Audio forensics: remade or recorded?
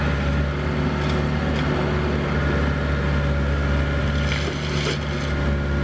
recorded